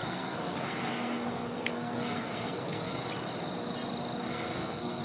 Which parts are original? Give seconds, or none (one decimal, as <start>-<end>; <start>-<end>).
3.0-4.3